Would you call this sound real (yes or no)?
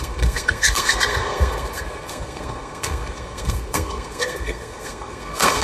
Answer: no